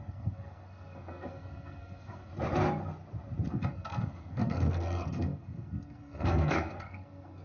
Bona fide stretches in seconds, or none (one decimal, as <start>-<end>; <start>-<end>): 2.3-3.5